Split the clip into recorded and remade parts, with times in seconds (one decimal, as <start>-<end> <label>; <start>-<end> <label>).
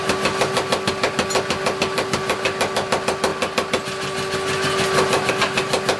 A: 0.0-6.0 recorded